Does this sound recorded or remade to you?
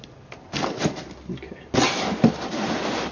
recorded